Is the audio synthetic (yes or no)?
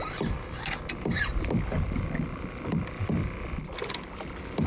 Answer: no